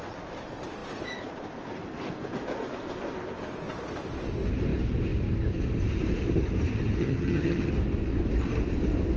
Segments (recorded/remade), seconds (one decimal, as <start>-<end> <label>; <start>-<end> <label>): 0.0-7.0 recorded; 7.0-7.7 remade; 7.7-9.2 recorded